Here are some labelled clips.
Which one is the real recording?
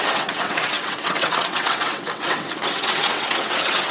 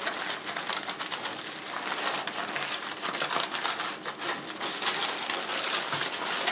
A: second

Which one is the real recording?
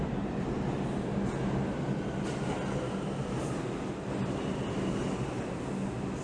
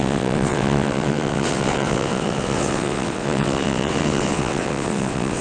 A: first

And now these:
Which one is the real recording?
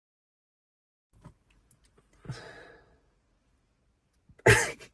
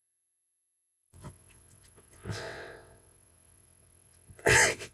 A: first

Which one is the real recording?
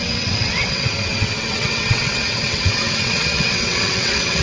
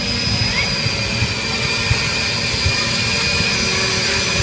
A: second